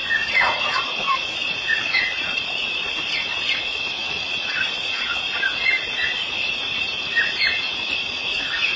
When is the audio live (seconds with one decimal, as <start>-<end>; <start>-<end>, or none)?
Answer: none